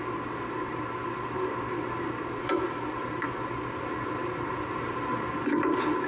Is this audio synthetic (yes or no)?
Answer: no